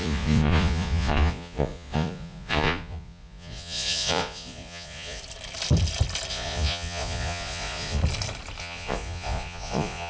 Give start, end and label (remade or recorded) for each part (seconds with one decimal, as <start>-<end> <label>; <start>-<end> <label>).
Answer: 0.0-5.2 remade; 5.2-6.3 recorded; 6.3-8.0 remade; 8.0-8.6 recorded; 8.6-10.1 remade